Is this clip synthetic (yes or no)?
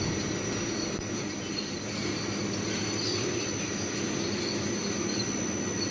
no